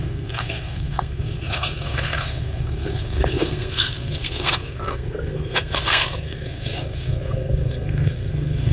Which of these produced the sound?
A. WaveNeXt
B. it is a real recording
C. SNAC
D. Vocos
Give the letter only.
C